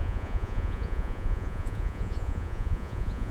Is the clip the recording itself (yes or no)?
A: no